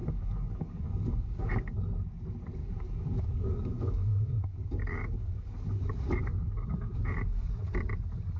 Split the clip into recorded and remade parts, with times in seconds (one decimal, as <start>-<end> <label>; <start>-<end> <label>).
0.0-1.8 remade; 1.8-2.6 recorded; 2.6-7.6 remade; 7.6-8.4 recorded